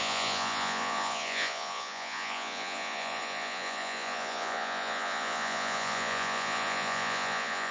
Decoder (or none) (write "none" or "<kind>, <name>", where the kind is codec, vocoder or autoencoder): vocoder, Vocos